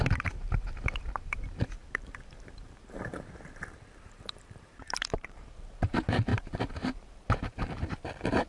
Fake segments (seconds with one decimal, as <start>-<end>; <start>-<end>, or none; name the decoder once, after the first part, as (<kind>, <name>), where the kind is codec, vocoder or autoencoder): 0.0-3.1 (vocoder, BigVGAN v2); 4.1-8.5